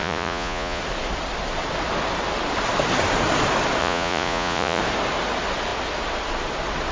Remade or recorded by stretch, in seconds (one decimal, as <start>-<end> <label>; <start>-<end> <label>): 0.0-0.8 remade; 0.8-3.8 recorded; 3.8-4.8 remade; 4.8-6.9 recorded